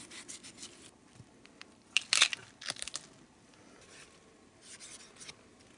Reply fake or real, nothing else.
real